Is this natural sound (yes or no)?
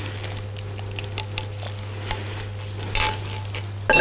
yes